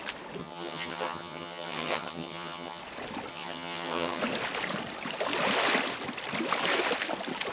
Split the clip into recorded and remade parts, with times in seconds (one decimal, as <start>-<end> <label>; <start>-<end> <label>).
0.0-0.4 recorded; 0.4-2.8 remade; 2.8-3.3 recorded; 3.3-4.2 remade; 4.2-7.5 recorded